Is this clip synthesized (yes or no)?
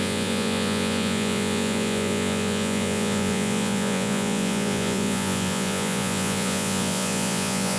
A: yes